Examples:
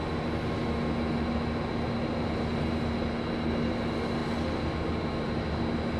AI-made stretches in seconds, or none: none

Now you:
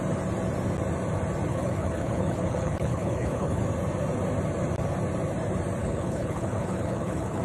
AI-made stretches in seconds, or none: 1.5-3.6 (codec, HILCodec); 5.8-7.4

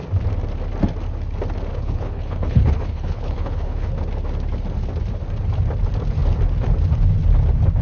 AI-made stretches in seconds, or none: 1.7-3.9 (codec, HILCodec)

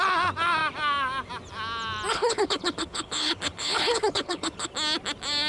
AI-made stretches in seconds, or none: 2.1-4.7 (codec, HILCodec)

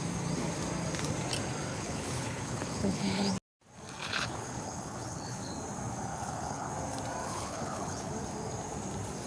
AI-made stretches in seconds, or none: 1.7-3.3 (codec, HILCodec); 4.0-5.5; 6.1-6.7; 7.2-8.1

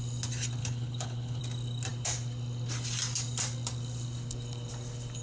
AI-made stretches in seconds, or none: 0.6-1.4 (codec, HILCodec)

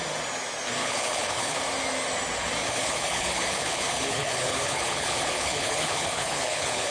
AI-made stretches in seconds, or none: 0.8-1.6 (codec, HILCodec); 2.6-6.9

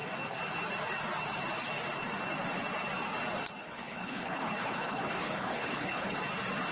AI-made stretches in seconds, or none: 3.6-6.2 (codec, HILCodec)